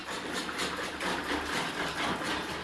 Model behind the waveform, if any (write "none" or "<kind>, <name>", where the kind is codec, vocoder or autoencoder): none